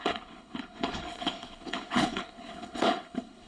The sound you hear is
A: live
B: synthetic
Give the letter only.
B